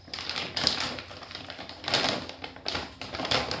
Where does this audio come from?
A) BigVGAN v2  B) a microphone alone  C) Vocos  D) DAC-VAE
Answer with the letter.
B